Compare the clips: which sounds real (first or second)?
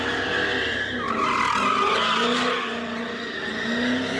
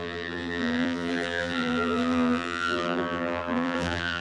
first